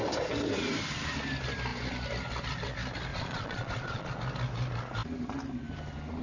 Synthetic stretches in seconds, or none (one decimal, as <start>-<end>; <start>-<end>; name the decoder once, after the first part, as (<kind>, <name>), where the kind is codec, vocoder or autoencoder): 3.1-4.1 (vocoder, Vocos)